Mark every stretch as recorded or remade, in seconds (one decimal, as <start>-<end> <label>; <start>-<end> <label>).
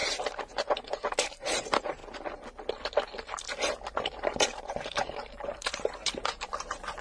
0.0-2.0 remade; 2.0-4.2 recorded; 4.2-7.0 remade